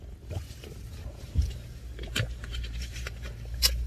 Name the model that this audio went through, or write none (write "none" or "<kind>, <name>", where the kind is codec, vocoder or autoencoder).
vocoder, BigVGAN v2